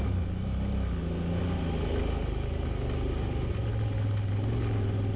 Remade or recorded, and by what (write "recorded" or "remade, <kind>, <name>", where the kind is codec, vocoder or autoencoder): recorded